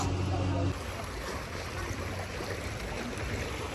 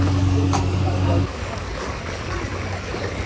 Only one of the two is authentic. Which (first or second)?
first